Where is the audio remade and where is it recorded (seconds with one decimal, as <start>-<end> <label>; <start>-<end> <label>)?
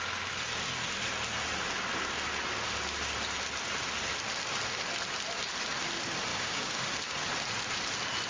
0.0-6.3 recorded; 6.3-6.8 remade; 6.8-8.3 recorded